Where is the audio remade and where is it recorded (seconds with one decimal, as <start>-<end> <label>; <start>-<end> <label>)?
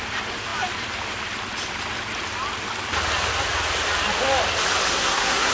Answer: 0.0-4.9 recorded; 4.9-5.5 remade